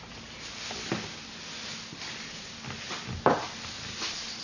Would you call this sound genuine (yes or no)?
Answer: yes